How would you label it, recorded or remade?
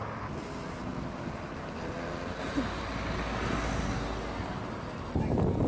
recorded